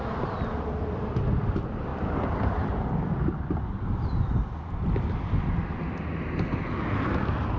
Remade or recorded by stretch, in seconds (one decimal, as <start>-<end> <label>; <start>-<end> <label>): 0.0-7.6 recorded